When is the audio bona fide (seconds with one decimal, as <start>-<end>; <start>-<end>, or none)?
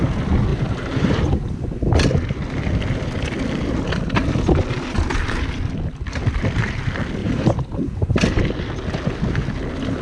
0.0-0.5; 1.2-7.2; 8.4-10.0